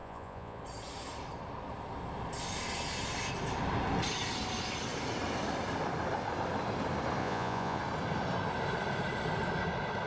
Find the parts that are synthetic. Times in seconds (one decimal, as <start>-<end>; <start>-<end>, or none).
0.0-0.6; 7.2-7.8